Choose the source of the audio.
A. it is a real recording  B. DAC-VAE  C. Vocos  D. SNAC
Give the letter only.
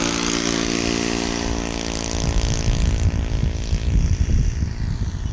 A